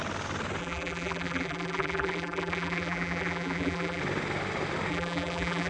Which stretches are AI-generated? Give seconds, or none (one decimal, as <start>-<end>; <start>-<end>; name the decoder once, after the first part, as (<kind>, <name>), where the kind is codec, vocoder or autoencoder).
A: 0.6-4.0 (vocoder, BigVGAN v2); 4.9-5.7